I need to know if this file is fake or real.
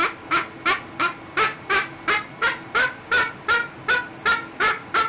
real